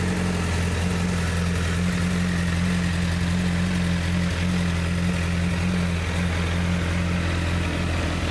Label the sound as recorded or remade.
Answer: recorded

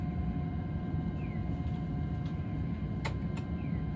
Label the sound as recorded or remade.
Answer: recorded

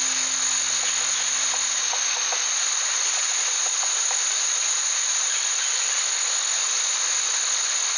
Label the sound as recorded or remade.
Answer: recorded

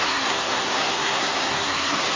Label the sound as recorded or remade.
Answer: remade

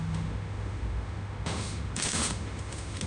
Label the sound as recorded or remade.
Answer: remade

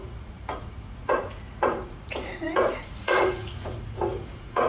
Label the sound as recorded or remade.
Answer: remade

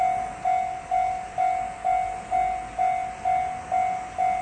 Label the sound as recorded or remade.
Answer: recorded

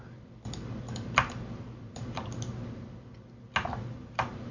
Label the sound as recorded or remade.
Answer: recorded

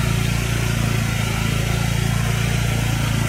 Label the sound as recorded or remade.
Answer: recorded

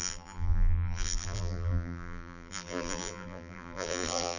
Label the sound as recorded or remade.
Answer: remade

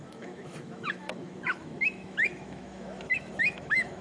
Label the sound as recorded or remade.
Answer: remade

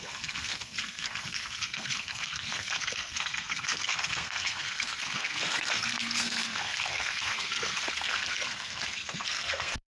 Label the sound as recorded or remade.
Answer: remade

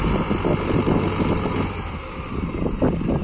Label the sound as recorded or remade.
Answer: recorded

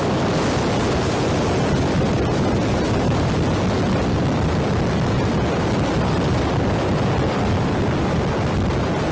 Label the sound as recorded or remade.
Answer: recorded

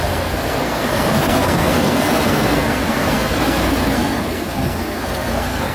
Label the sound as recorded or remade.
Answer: remade